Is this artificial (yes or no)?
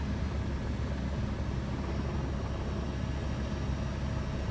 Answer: no